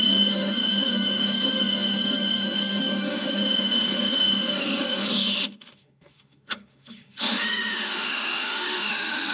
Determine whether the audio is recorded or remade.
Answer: remade